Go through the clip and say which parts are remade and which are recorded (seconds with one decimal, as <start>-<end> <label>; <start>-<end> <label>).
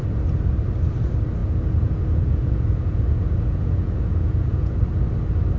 0.0-1.4 recorded; 1.4-4.8 remade; 4.8-5.6 recorded